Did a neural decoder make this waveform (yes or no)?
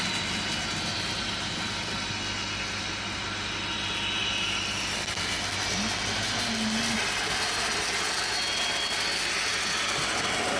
no